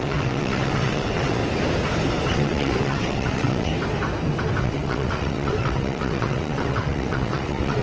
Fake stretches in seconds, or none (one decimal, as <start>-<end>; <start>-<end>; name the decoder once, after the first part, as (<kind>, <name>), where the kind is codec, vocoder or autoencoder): 0.0-1.4 (vocoder, WaveNeXt); 2.3-3.7; 4.6-7.8